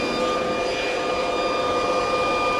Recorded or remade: recorded